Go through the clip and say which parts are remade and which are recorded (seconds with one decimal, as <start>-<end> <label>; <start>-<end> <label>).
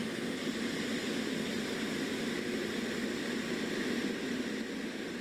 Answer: 0.0-5.2 recorded